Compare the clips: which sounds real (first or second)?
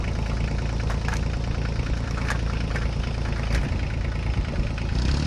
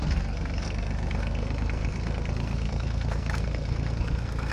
first